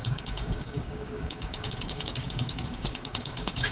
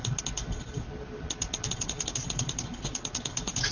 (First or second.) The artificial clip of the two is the first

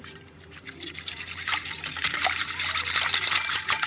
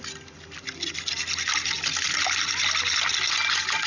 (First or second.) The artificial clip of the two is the first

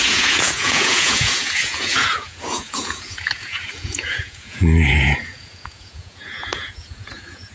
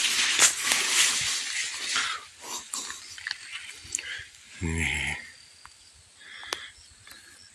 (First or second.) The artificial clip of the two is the first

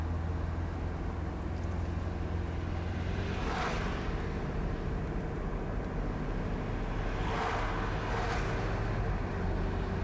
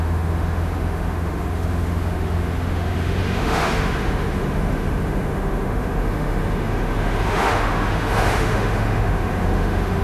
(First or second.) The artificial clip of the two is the second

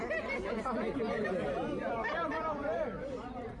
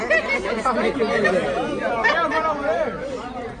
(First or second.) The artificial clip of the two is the first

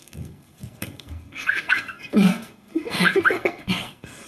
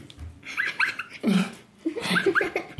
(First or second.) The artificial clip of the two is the first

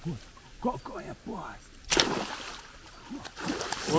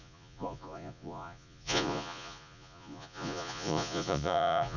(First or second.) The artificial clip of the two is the second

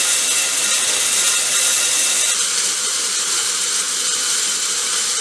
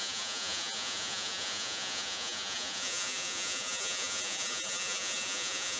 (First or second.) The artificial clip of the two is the second